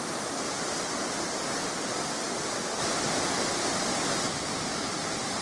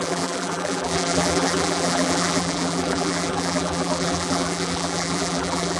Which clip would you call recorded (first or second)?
first